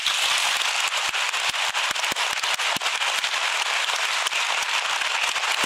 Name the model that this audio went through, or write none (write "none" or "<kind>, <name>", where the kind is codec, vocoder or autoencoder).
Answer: none